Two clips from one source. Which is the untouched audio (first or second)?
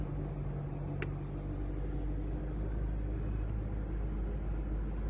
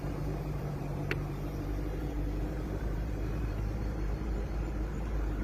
first